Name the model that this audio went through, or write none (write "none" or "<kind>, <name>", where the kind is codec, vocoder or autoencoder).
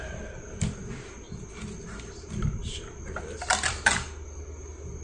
none